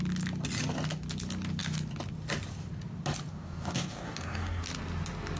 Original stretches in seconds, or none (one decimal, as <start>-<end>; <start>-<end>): 0.0-3.3; 4.6-5.4